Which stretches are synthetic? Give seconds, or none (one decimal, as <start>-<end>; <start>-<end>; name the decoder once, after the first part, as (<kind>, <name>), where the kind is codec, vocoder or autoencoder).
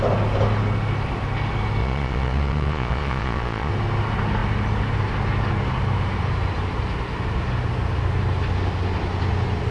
1.8-3.7 (vocoder, Vocos)